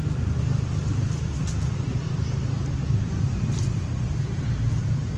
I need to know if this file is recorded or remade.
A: recorded